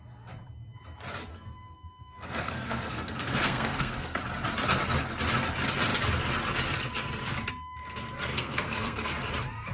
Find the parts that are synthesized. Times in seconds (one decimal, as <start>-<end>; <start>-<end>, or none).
1.3-4.2; 8.3-9.1